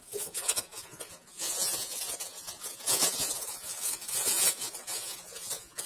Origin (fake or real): fake